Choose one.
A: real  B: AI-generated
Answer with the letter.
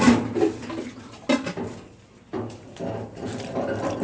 A